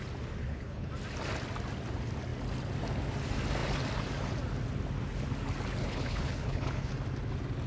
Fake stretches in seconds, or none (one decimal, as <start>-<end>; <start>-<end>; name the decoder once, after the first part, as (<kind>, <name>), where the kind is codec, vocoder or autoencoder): 0.4-0.9 (codec, HILCodec); 5.8-6.9

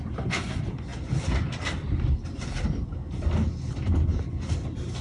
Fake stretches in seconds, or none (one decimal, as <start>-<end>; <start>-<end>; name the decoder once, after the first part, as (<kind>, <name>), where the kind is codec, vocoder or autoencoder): none

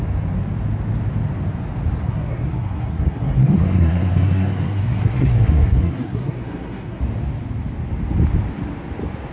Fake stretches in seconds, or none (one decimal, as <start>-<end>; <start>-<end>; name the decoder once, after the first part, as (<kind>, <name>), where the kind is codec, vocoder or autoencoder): 2.0-7.0 (codec, SNAC)